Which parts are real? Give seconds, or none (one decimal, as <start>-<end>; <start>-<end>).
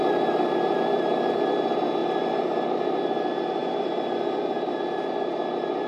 0.0-2.0; 3.2-3.6; 4.2-5.9